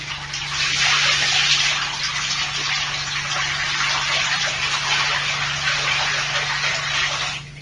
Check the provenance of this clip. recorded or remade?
recorded